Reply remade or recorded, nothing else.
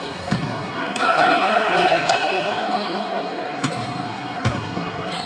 remade